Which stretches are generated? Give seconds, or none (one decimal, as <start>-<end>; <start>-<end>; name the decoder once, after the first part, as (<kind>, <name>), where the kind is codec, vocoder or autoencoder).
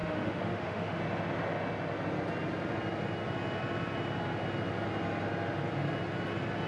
0.0-1.0 (autoencoder, DAC-VAE)